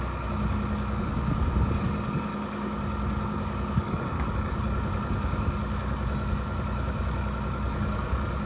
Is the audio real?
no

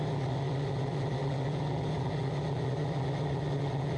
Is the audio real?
yes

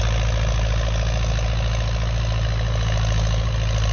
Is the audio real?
yes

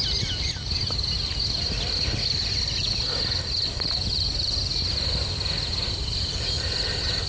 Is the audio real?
yes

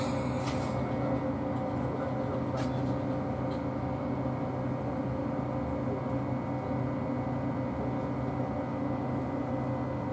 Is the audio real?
yes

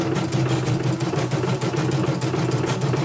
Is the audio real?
yes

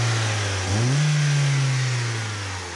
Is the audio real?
yes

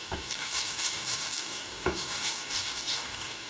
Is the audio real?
no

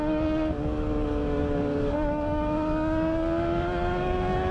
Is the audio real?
no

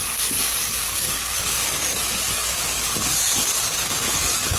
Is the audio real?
no